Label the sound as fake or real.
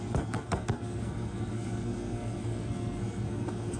fake